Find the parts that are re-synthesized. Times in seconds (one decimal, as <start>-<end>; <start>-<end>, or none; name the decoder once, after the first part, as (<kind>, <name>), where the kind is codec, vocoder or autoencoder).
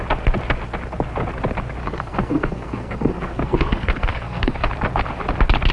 1.8-4.7 (codec, SNAC)